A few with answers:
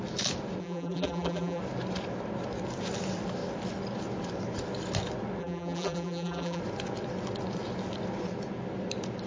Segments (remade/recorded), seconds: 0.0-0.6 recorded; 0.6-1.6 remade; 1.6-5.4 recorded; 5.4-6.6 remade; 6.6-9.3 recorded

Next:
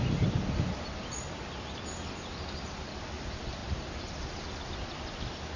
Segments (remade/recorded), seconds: 0.0-3.6 recorded; 3.6-4.4 remade; 4.4-5.6 recorded

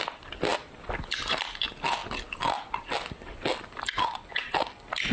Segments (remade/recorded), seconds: 0.0-5.1 recorded

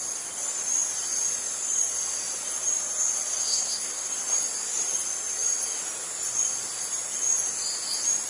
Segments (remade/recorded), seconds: 0.0-3.4 recorded; 3.4-4.1 remade; 4.1-8.3 recorded

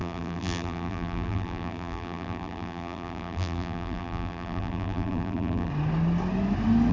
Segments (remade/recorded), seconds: 0.0-5.7 remade; 5.7-6.9 recorded

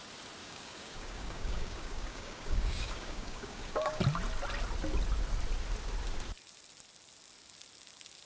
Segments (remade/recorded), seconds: 0.0-0.4 recorded; 0.4-4.0 remade; 4.0-8.3 recorded

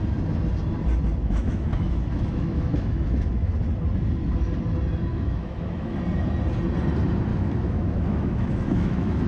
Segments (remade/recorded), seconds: 0.0-1.2 recorded; 1.2-3.5 remade; 3.5-5.1 recorded; 5.1-6.0 remade; 6.0-7.3 recorded; 7.3-9.3 remade

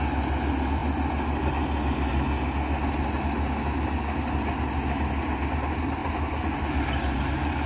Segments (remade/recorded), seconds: 0.0-7.7 recorded